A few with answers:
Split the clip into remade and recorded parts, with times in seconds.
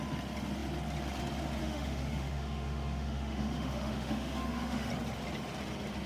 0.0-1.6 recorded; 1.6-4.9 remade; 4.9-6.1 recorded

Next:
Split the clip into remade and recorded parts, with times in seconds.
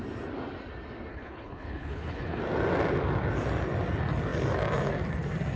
0.0-1.1 recorded; 1.1-2.4 remade; 2.4-5.6 recorded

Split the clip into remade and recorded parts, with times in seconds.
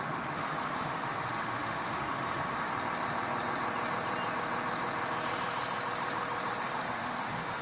0.0-2.7 remade; 2.7-6.6 recorded; 6.6-7.6 remade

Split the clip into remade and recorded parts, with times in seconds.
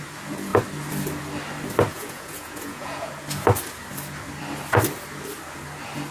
0.0-1.9 recorded; 1.9-3.1 remade; 3.1-6.1 recorded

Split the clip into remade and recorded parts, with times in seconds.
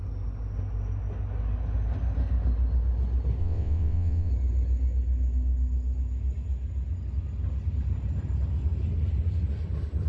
0.0-3.4 recorded; 3.4-4.3 remade; 4.3-10.1 recorded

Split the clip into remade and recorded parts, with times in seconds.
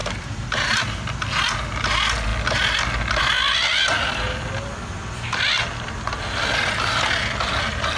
0.0-8.0 recorded